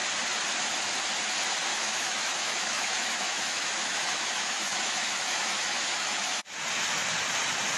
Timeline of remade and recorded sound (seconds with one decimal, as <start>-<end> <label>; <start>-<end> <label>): 0.0-1.7 recorded; 1.7-6.4 remade; 6.4-7.8 recorded